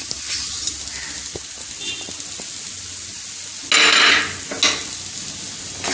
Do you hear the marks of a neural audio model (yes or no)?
no